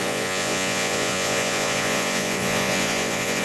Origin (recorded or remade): remade